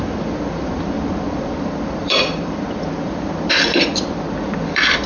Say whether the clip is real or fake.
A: fake